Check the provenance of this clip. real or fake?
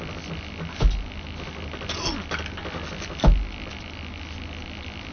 real